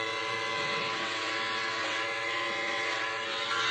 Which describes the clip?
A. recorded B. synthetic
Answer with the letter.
B